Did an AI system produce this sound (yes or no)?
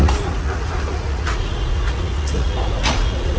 yes